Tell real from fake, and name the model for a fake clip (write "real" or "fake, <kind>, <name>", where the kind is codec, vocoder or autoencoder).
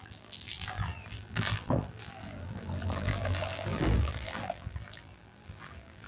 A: fake, vocoder, BigVGAN v2